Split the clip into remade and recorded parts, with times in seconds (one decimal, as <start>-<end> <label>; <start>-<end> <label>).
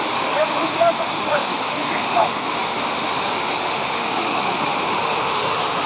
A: 0.0-5.9 remade